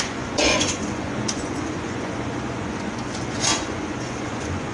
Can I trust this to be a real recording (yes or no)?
no